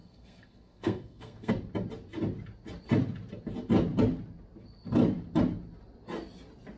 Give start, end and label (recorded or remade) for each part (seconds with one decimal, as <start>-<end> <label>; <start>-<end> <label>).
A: 0.0-1.5 remade; 1.5-6.8 recorded